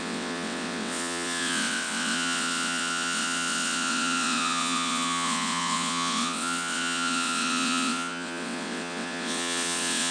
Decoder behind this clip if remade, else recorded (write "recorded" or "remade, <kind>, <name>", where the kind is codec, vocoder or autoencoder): remade, vocoder, WaveNeXt